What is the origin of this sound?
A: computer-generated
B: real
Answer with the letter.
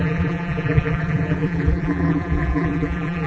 A